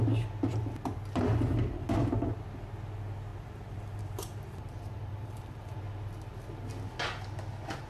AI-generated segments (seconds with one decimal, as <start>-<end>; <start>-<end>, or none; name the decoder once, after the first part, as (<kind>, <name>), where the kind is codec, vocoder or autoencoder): 3.3-5.8 (vocoder, BigVGAN v2)